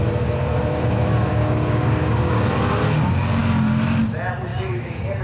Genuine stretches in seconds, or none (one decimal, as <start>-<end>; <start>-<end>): 0.0-1.4; 2.4-4.5